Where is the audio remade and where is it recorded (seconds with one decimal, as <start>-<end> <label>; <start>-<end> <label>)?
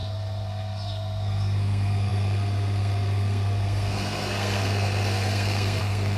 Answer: 0.0-6.2 remade